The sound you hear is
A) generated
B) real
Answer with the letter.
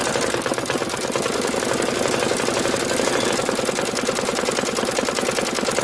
B